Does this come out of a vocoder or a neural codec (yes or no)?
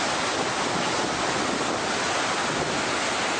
no